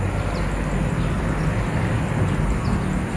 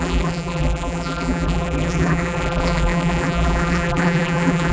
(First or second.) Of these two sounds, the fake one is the second